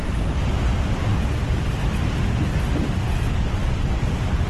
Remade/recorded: recorded